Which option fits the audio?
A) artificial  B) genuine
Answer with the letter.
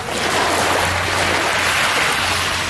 B